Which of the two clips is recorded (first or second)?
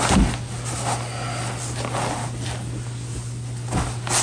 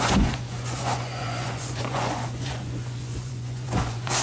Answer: first